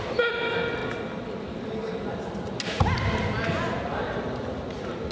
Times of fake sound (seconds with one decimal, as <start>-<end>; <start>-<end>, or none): none